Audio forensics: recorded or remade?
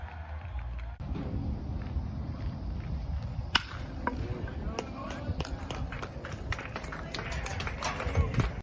recorded